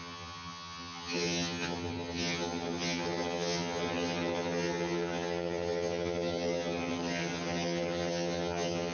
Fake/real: fake